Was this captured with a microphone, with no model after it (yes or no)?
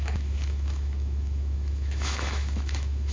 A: no